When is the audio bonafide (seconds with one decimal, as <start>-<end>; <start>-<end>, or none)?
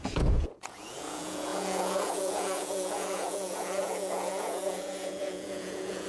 none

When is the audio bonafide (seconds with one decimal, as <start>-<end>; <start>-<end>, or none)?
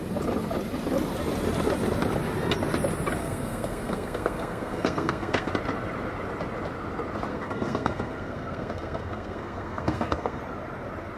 0.0-3.2; 5.5-7.3; 10.4-11.2